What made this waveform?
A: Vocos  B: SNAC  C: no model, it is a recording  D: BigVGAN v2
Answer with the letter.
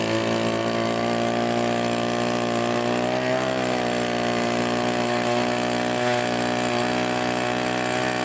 C